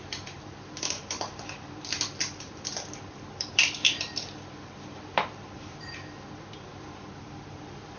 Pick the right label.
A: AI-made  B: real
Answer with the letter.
A